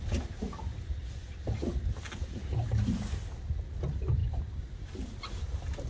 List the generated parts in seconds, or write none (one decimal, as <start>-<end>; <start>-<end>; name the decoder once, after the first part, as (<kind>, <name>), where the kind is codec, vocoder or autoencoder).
none